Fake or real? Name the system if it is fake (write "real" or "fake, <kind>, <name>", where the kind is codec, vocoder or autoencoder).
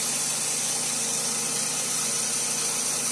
fake, vocoder, Vocos